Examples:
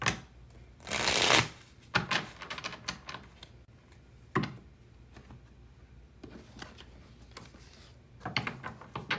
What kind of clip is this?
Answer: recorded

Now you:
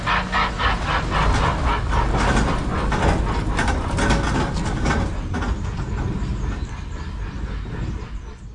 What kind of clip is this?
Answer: recorded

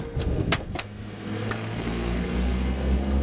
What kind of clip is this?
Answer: remade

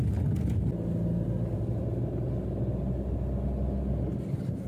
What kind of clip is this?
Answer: recorded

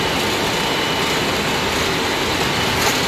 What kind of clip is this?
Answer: recorded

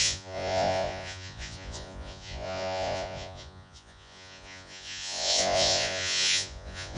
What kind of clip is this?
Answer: remade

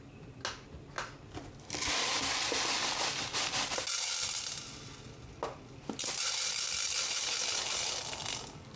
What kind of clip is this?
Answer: recorded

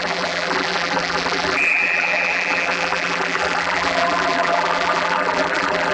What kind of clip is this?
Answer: remade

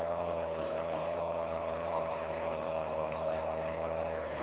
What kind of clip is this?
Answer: remade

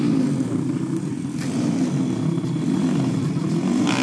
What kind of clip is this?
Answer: recorded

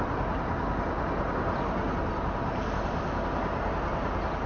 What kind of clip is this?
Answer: recorded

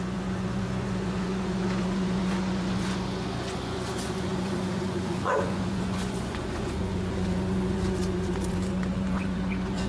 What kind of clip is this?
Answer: remade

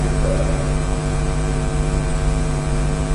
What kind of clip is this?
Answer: remade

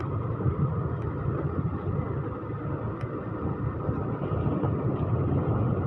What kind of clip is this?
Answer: recorded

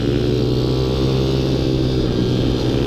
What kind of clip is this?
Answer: recorded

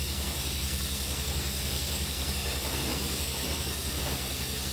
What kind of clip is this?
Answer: remade